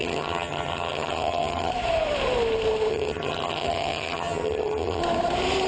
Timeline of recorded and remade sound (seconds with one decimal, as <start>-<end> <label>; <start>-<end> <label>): 0.0-1.7 remade; 1.7-2.9 recorded; 2.9-5.0 remade; 5.0-5.7 recorded